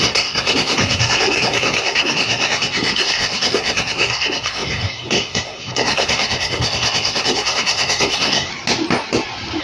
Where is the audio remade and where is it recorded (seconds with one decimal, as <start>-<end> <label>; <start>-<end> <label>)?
0.0-8.5 remade; 8.5-9.6 recorded